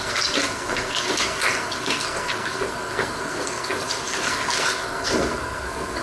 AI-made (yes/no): yes